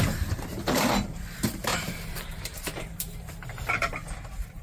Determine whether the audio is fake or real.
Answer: fake